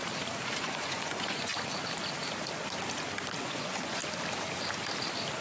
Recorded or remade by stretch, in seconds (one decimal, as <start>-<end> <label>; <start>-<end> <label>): 0.0-0.6 recorded; 0.6-1.5 remade; 1.5-3.4 recorded; 3.4-4.0 remade; 4.0-5.4 recorded

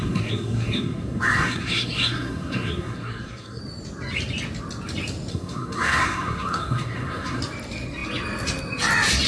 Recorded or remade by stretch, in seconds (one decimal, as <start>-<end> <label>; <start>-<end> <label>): 0.0-3.6 remade; 3.6-5.3 recorded; 5.3-7.4 remade; 7.4-9.3 recorded

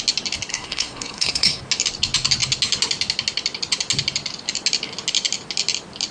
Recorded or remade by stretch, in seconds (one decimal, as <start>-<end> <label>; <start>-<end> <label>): 0.0-0.5 recorded; 0.5-1.6 remade; 1.6-6.1 recorded

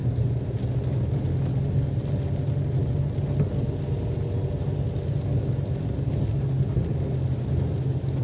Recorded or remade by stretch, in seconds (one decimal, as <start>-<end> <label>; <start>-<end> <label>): 0.0-8.2 recorded

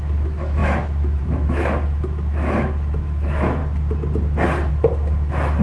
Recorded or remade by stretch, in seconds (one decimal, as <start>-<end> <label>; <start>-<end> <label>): 0.0-3.6 remade; 3.6-4.7 recorded; 4.7-5.6 remade